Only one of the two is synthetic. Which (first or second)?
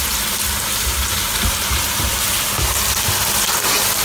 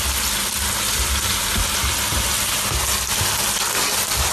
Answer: first